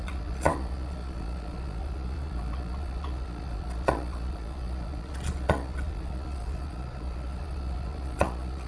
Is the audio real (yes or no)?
no